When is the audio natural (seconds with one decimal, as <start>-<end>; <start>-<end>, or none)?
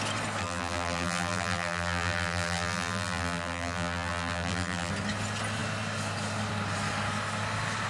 0.0-0.4; 4.9-7.9